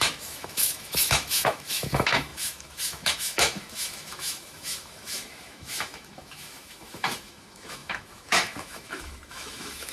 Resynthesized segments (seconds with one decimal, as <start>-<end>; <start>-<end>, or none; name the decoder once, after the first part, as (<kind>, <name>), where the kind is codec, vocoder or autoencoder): 0.0-9.9 (autoencoder, DAC-VAE)